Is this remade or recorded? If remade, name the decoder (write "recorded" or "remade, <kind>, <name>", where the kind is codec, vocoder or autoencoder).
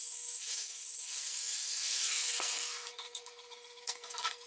remade, codec, SNAC